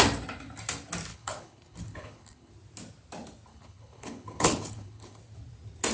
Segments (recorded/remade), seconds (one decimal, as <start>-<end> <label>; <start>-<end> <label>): 0.0-1.1 recorded; 1.1-2.5 remade; 2.5-3.5 recorded; 3.5-5.2 remade; 5.2-5.9 recorded